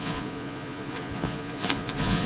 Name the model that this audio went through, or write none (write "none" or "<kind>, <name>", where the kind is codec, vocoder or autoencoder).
vocoder, Vocos